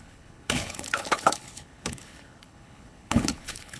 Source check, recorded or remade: remade